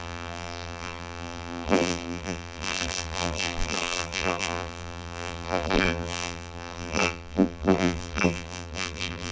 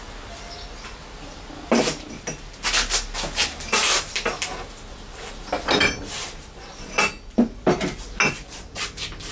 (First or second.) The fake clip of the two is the first